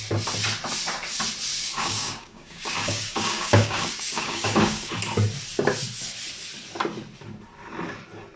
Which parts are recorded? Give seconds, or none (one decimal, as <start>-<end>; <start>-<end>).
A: 0.0-1.5; 4.9-8.4